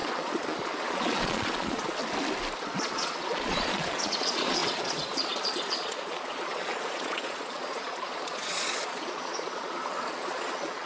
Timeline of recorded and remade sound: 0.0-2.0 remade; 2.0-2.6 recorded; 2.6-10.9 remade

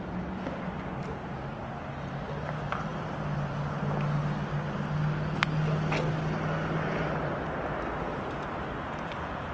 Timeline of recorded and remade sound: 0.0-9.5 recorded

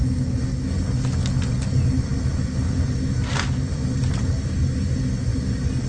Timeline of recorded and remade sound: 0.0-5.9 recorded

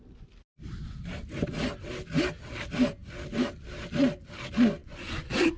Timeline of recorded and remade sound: 0.0-4.8 recorded; 4.8-5.6 remade

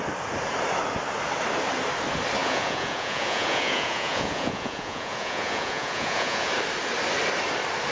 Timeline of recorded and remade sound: 0.0-2.4 recorded; 2.4-6.5 remade; 6.5-7.9 recorded